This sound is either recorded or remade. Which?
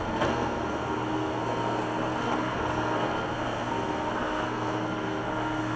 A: remade